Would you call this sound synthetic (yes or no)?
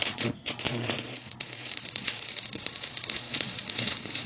yes